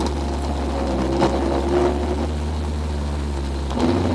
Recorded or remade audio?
recorded